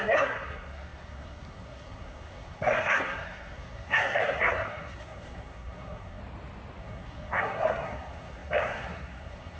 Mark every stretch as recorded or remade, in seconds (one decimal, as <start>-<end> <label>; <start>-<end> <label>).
0.0-6.2 remade; 6.2-6.8 recorded; 6.8-9.6 remade